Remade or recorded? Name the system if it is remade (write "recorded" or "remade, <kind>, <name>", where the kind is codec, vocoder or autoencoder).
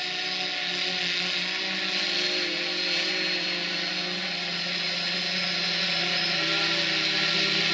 recorded